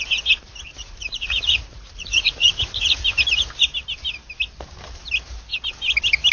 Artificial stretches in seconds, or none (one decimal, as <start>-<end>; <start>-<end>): 0.7-2.9